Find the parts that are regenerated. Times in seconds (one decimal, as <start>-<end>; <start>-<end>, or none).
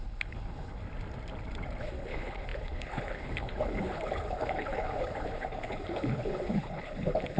0.0-0.8; 1.8-7.4